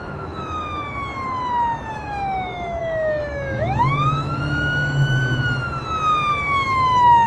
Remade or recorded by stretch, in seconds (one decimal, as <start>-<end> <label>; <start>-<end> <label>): 0.0-1.1 remade; 1.1-1.9 recorded; 1.9-5.2 remade; 5.2-6.3 recorded; 6.3-7.3 remade